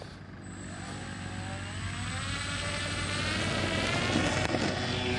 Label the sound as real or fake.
real